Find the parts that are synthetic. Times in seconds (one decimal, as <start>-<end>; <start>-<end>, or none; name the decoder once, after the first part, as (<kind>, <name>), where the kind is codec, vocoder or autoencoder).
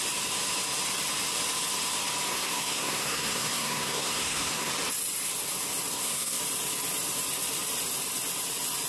2.3-4.7 (codec, SNAC); 5.9-6.4